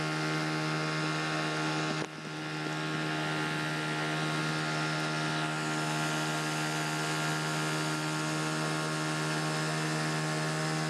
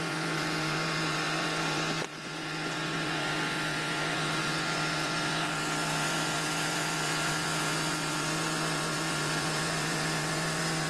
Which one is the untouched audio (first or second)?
first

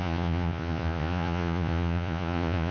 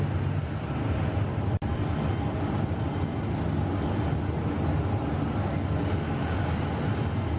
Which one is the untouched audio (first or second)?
second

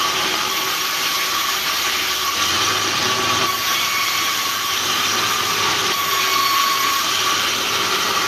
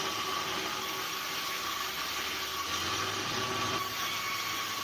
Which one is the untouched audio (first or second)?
second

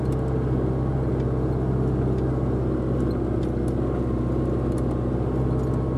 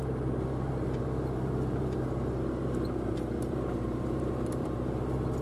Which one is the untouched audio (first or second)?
first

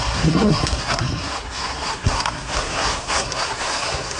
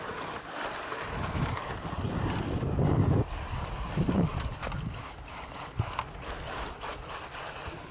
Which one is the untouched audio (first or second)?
second